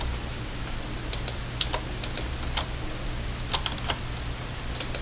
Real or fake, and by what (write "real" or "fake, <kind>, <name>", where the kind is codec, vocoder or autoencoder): real